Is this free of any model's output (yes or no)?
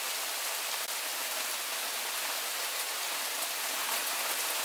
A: yes